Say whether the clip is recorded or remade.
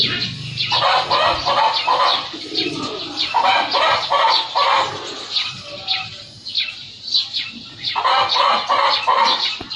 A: recorded